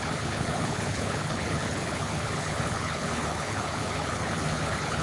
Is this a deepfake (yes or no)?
yes